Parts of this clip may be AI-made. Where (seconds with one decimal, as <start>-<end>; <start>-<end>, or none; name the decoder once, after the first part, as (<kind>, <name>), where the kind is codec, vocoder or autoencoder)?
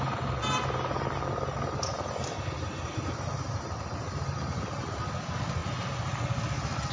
1.9-4.2 (vocoder, BigVGAN v2); 5.6-6.2